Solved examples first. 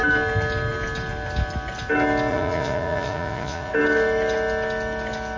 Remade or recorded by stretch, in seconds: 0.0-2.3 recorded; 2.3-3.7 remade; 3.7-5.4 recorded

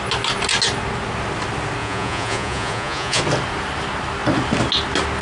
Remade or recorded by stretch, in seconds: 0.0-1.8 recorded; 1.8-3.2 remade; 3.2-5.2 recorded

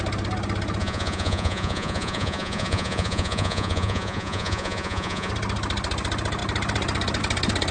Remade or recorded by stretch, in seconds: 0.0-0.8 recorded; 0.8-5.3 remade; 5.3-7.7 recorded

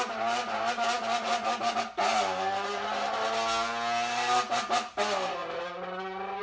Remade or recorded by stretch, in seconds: 0.0-6.4 recorded